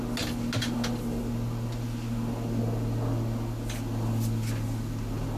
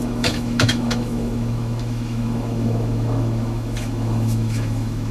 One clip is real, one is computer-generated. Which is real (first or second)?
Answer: first